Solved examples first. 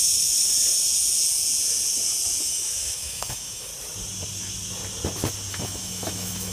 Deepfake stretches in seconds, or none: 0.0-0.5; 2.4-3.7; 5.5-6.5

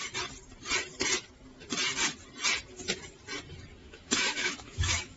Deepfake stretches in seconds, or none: 3.8-5.2